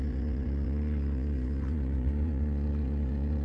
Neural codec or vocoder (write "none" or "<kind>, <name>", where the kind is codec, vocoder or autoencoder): vocoder, Vocos